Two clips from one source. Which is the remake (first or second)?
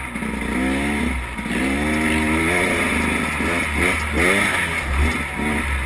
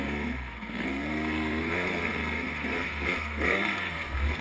second